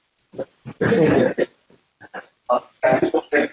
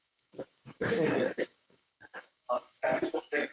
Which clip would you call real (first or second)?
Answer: first